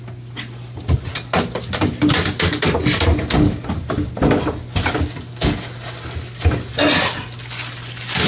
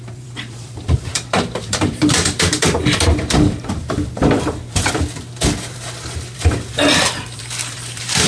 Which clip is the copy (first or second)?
second